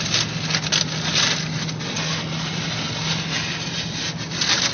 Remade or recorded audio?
recorded